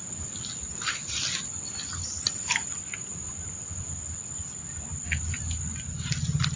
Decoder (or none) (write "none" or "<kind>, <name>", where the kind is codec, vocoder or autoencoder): none